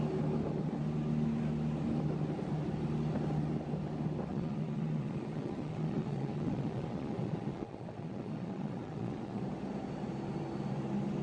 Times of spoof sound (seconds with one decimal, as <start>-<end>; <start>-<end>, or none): 4.3-9.4